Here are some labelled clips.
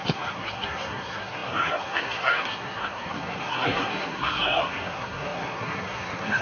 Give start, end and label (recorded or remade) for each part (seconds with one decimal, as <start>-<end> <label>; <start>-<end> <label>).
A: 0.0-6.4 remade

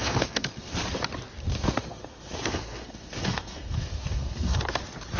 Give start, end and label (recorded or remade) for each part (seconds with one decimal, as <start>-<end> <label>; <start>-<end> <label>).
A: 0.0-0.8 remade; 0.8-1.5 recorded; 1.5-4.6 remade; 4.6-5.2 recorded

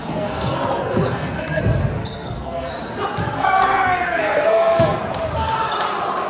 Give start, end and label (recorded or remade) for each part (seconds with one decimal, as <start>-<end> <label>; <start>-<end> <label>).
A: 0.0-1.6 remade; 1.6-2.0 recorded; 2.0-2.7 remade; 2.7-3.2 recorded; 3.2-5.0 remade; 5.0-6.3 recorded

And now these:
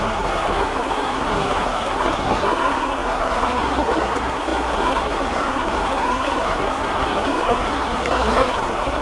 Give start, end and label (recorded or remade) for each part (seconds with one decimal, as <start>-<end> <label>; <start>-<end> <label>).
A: 0.0-9.0 remade